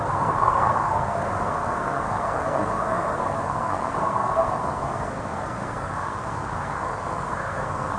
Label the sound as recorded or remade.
remade